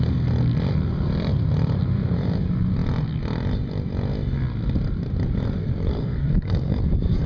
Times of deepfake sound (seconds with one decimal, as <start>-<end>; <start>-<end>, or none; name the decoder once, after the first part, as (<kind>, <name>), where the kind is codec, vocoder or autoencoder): 5.6-6.8 (codec, SNAC)